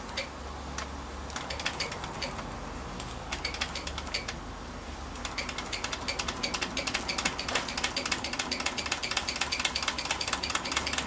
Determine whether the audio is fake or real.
real